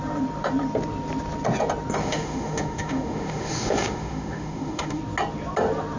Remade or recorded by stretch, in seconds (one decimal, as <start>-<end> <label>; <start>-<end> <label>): 0.0-2.0 recorded; 2.0-5.0 remade; 5.0-6.0 recorded